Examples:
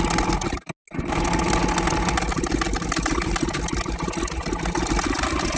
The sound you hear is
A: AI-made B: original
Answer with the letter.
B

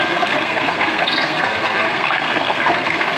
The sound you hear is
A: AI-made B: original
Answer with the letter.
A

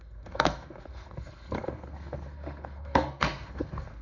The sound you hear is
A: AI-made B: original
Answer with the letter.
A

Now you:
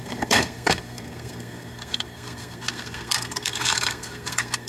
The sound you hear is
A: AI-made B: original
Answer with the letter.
A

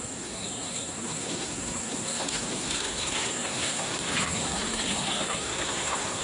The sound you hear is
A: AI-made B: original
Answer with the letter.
A